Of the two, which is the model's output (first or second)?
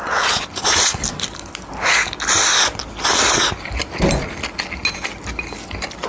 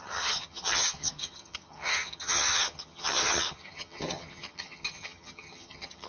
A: second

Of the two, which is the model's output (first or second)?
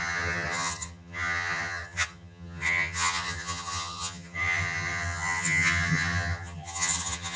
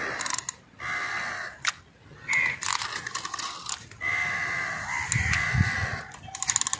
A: first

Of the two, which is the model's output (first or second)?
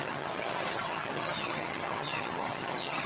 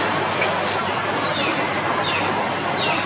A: first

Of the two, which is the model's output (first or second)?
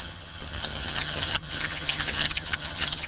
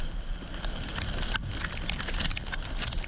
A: first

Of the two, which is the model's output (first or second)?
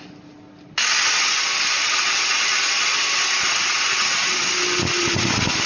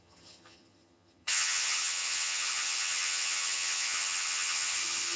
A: second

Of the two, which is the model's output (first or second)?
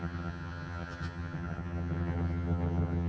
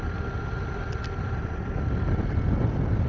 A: first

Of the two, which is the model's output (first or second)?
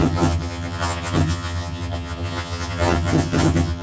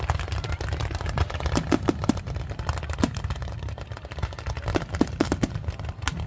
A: first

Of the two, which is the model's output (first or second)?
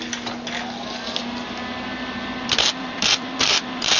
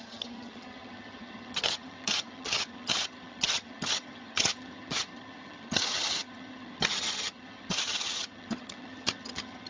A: second